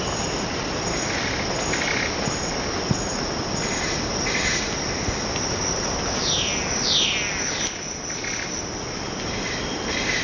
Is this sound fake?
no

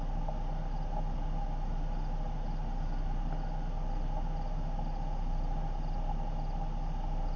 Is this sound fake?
no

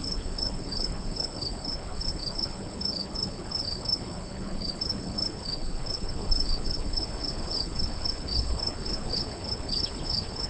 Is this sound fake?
yes